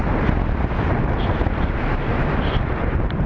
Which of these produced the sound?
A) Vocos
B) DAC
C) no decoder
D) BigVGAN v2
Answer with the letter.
C